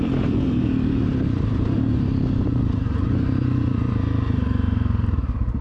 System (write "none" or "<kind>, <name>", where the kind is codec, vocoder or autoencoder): vocoder, BigVGAN v2